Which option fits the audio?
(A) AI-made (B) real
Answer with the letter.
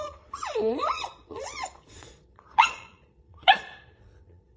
A